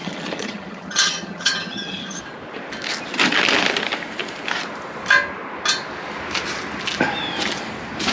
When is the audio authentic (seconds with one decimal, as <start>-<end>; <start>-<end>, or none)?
2.2-8.1